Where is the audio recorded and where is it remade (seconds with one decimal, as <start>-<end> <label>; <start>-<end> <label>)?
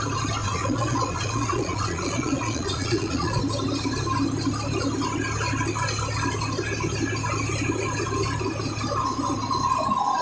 0.0-0.4 recorded; 0.4-3.4 remade; 3.4-10.2 recorded